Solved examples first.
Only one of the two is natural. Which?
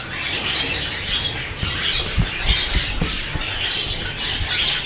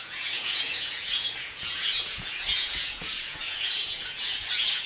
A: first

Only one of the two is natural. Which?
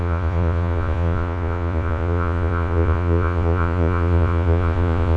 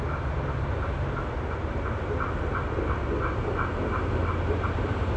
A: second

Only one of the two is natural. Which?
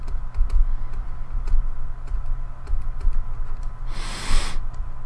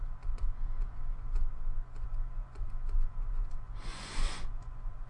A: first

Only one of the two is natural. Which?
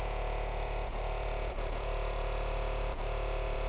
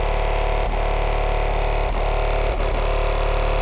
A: second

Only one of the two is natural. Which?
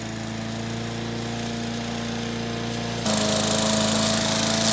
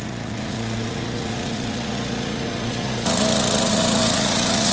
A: first